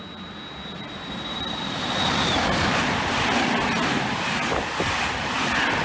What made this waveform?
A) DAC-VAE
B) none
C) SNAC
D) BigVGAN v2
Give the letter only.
B